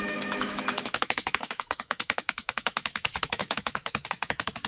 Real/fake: fake